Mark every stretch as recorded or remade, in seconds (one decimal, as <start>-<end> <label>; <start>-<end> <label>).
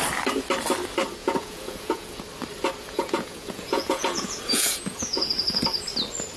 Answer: 0.0-1.2 recorded; 1.2-2.2 remade; 2.2-2.8 recorded; 2.8-5.3 remade; 5.3-6.4 recorded